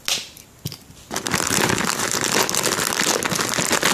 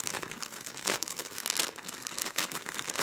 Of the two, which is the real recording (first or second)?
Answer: first